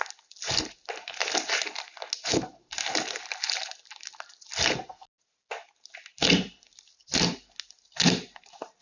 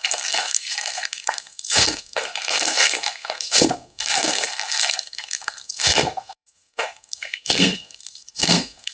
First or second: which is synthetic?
second